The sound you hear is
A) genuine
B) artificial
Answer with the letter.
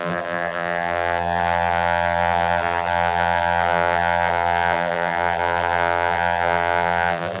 B